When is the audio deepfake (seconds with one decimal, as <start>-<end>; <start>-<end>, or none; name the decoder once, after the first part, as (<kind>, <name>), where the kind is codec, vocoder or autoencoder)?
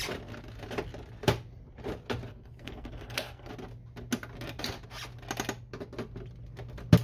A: 2.3-3.5 (codec, SNAC)